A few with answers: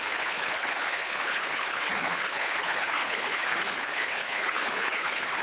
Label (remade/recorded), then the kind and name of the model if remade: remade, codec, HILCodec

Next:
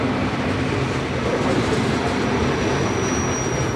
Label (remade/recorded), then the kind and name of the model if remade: recorded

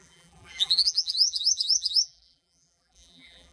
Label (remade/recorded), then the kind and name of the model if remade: remade, vocoder, BigVGAN v2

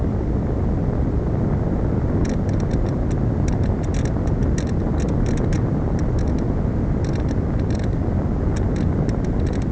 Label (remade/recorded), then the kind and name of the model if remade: recorded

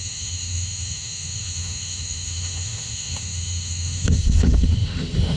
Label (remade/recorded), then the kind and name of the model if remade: remade, autoencoder, DAC-VAE